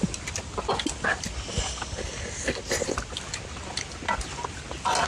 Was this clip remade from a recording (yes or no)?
no